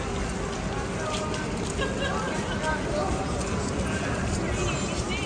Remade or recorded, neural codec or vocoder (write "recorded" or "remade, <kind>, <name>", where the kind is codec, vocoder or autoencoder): recorded